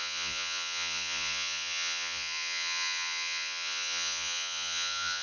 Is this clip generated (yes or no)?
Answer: yes